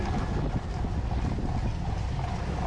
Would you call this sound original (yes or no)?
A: yes